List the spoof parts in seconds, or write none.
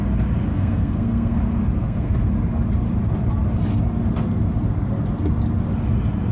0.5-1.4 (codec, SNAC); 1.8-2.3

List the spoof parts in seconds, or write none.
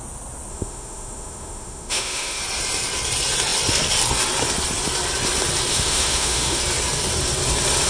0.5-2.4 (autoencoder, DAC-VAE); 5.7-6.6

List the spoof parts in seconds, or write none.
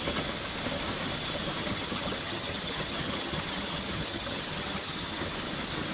1.6-5.1 (vocoder, HiFi-GAN)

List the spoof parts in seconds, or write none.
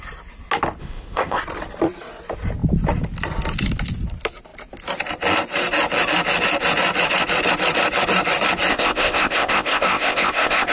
0.8-1.4 (codec, ZipCodec); 8.7-10.7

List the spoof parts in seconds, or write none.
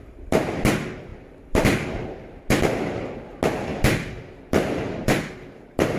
1.1-2.4 (vocoder, BigVGAN v2); 3.7-6.0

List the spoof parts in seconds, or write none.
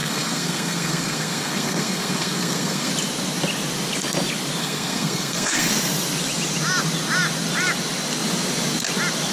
0.0-2.9 (codec, SNAC); 4.6-5.7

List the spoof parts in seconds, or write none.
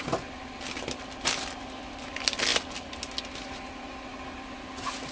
none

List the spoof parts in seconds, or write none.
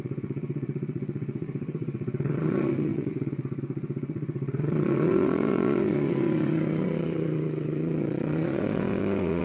0.0-9.4 (vocoder, WaveNeXt)